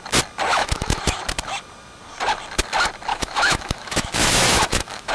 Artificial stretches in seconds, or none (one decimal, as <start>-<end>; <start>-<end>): 0.5-1.2; 3.1-5.1

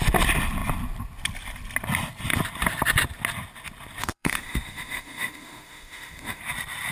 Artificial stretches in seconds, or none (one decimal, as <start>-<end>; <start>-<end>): 4.0-6.4

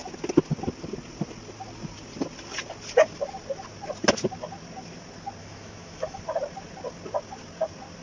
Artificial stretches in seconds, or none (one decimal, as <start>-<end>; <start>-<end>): 5.4-6.2

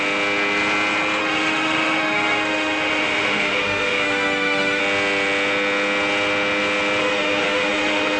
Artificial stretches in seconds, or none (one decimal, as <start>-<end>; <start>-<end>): 1.2-4.8; 7.0-8.2

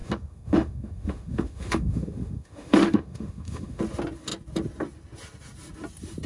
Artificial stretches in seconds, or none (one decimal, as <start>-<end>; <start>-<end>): 0.0-3.8

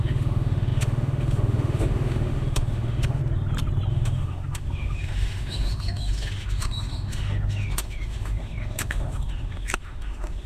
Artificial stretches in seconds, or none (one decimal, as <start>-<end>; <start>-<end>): 0.0-3.2; 3.9-10.5